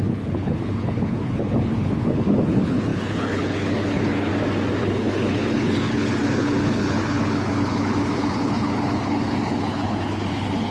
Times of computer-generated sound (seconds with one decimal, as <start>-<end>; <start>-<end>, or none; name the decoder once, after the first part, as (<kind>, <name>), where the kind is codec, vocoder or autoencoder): 0.0-4.3 (codec, HILCodec); 4.8-10.7